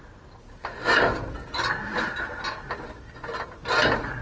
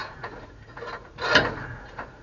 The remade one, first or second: second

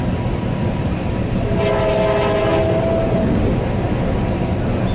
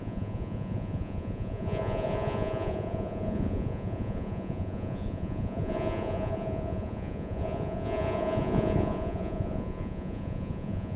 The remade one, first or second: second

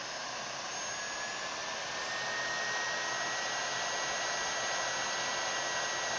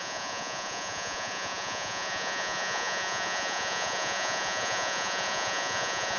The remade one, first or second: second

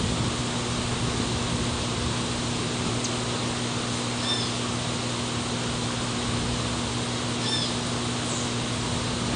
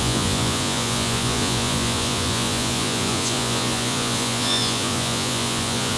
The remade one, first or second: second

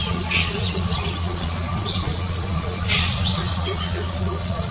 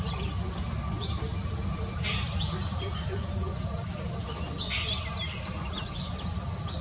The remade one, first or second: first